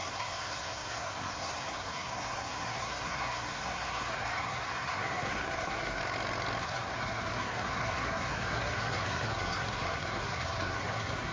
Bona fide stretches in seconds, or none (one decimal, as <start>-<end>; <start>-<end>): 6.0-6.6